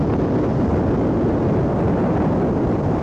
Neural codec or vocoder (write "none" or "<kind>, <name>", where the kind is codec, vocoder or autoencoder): none